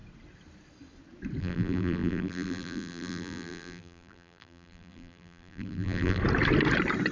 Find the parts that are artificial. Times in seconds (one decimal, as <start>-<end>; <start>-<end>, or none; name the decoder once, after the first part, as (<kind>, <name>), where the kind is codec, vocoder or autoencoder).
1.4-6.2 (vocoder, BigVGAN v2)